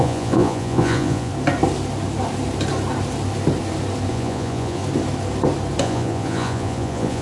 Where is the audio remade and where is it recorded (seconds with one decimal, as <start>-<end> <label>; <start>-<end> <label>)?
0.0-1.3 remade; 1.3-4.1 recorded; 4.1-4.8 remade; 4.8-5.8 recorded; 5.8-7.2 remade